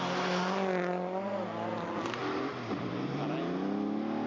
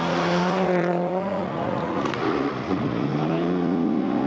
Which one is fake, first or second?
second